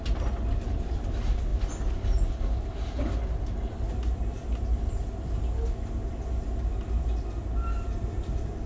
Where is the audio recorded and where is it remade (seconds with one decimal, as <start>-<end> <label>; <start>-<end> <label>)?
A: 0.0-8.7 recorded